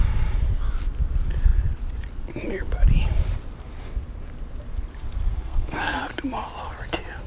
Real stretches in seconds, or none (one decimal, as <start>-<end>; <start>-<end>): 0.0-5.3; 6.0-7.3